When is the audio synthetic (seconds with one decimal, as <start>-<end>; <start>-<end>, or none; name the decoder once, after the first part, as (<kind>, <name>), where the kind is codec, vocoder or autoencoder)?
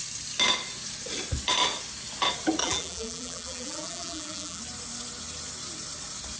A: 2.6-4.6 (vocoder, BigVGAN v2)